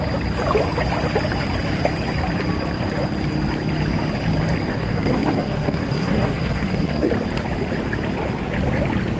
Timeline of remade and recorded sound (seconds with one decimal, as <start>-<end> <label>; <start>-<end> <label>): 0.0-4.7 recorded; 4.7-7.1 remade; 7.1-9.2 recorded